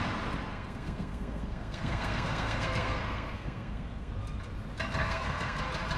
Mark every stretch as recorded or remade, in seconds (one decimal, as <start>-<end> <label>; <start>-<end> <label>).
0.0-0.5 recorded; 0.5-4.1 remade; 4.1-5.0 recorded; 5.0-5.6 remade; 5.6-6.0 recorded